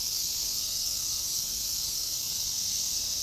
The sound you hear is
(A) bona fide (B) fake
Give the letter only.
B